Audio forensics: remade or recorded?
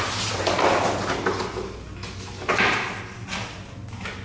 recorded